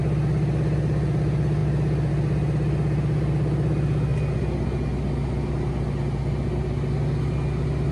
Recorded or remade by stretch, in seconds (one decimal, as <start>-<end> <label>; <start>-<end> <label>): 0.0-7.9 recorded